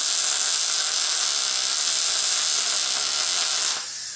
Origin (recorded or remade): recorded